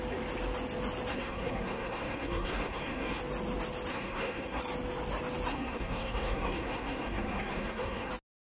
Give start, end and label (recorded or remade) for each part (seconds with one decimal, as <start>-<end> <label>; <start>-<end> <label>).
0.0-1.1 recorded; 1.1-3.2 remade; 3.2-3.9 recorded; 3.9-4.6 remade; 4.6-5.5 recorded; 5.5-8.1 remade; 8.1-8.5 recorded